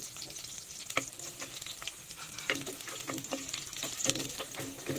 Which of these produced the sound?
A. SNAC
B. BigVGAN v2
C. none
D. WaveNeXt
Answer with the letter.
C